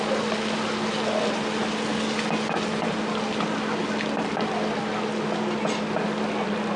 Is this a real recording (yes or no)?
yes